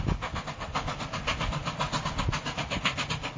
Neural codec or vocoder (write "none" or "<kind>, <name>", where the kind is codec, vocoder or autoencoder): none